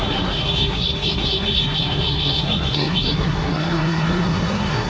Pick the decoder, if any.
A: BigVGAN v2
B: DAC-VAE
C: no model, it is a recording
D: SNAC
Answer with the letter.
D